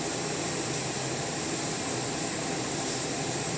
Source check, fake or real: fake